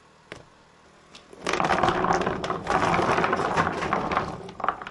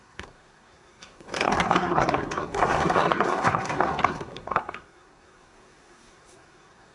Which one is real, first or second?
first